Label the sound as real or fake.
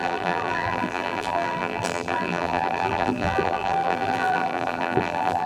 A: fake